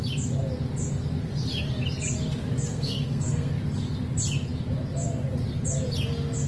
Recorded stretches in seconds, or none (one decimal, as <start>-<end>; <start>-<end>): 0.0-2.7; 3.5-6.5